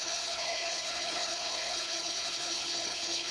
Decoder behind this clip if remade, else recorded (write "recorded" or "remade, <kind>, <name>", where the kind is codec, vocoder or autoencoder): remade, codec, HILCodec